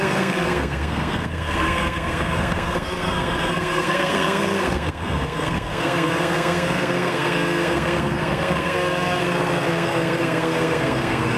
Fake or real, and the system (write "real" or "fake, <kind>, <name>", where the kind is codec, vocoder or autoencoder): fake, codec, SNAC